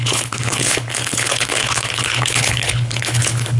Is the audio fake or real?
fake